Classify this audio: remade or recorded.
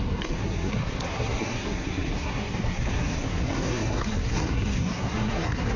remade